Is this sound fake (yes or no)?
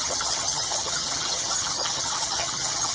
yes